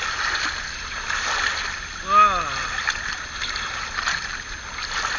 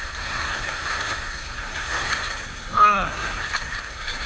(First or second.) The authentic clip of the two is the first